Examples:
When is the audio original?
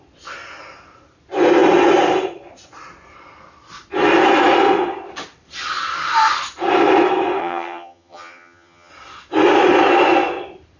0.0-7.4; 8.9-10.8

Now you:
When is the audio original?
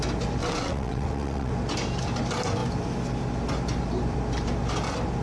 0.0-0.4; 1.5-5.2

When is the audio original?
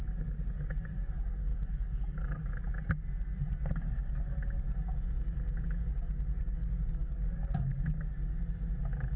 0.0-1.5; 2.5-6.6; 7.8-9.2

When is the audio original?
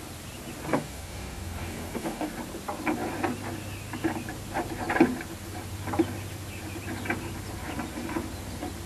0.0-0.7; 2.3-8.9